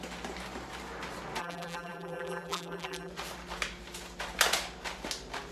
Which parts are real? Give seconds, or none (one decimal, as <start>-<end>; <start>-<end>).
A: 0.0-1.4; 3.1-5.5